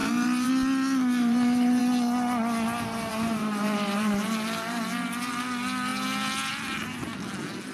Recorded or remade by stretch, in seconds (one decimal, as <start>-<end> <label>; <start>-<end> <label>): 0.0-0.5 remade; 0.5-1.2 recorded; 1.2-1.8 remade; 1.8-3.1 recorded; 3.1-4.8 remade; 4.8-7.7 recorded